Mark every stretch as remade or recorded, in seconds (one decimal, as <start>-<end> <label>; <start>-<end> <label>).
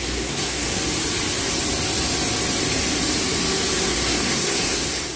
0.0-0.7 remade; 0.7-3.8 recorded; 3.8-5.2 remade